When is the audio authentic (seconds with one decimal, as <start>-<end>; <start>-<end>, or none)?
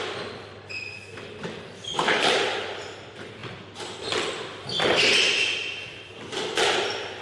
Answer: 0.0-7.2